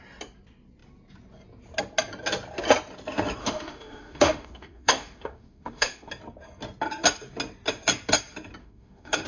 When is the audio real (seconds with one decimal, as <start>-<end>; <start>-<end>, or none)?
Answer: 0.0-3.4; 6.1-8.6